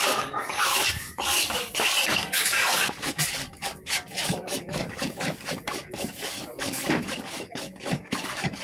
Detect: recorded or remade remade